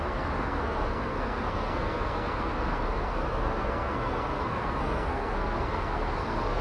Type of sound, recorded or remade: remade